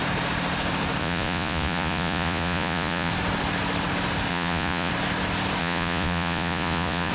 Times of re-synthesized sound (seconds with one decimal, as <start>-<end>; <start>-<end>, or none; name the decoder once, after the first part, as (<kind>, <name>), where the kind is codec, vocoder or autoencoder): 1.0-3.1 (vocoder, Vocos); 4.3-4.9; 5.6-7.1

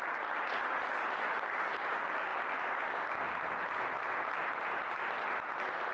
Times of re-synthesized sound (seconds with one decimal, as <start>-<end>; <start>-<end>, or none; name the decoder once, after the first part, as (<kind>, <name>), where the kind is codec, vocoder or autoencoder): none